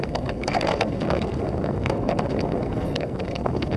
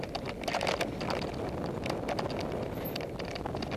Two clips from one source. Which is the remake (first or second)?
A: first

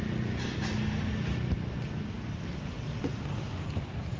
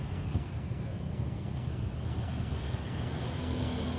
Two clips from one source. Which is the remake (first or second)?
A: second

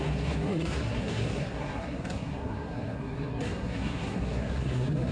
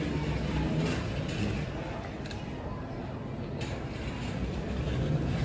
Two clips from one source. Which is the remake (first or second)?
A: first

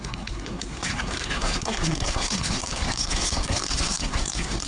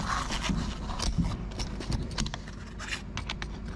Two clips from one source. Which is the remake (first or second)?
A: first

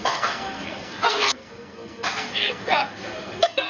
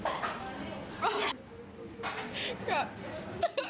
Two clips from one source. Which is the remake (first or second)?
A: first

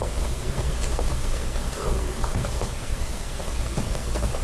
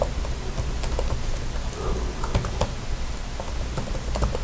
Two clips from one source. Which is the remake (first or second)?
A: first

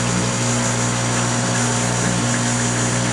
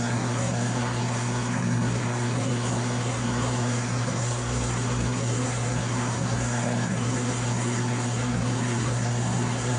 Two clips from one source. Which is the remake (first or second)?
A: second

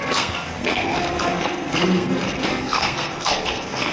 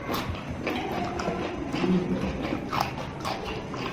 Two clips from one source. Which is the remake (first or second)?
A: first